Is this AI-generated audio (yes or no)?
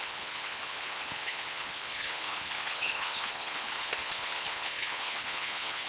yes